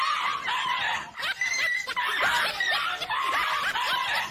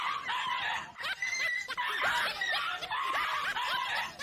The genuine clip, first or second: second